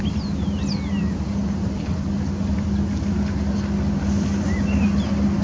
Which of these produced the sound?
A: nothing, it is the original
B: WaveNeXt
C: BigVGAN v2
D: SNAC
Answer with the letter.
A